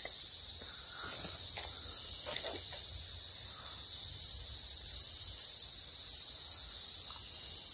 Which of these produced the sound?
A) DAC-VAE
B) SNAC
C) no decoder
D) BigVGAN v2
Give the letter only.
C